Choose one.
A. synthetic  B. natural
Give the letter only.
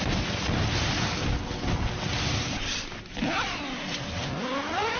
B